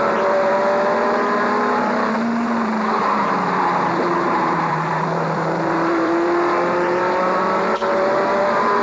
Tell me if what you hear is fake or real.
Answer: fake